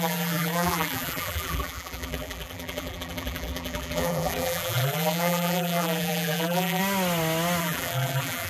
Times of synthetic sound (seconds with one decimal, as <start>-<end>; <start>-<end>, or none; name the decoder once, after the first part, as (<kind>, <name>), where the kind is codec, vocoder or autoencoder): 0.0-6.8 (vocoder, BigVGAN v2); 7.6-8.5